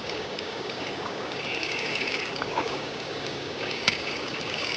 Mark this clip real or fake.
fake